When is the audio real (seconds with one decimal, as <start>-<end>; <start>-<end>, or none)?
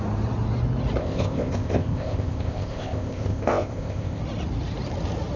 0.0-1.0; 4.2-5.4